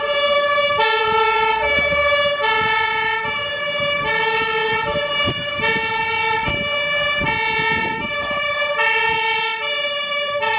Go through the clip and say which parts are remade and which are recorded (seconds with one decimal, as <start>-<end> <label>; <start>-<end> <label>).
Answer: 0.0-4.6 remade; 4.6-5.2 recorded; 5.2-6.4 remade; 6.4-7.8 recorded; 7.8-10.6 remade